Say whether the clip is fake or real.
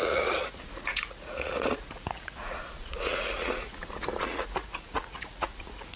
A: fake